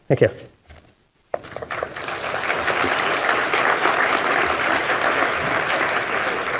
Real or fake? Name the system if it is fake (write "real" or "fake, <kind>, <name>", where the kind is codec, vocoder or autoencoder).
real